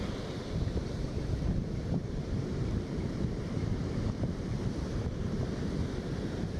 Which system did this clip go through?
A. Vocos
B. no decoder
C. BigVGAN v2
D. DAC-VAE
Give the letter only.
C